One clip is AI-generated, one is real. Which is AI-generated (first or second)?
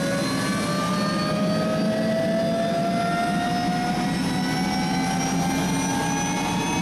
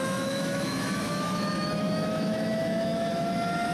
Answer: second